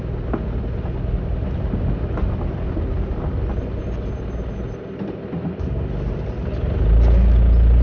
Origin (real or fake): real